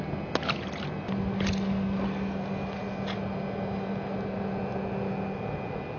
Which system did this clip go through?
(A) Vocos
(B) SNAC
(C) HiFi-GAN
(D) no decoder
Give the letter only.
D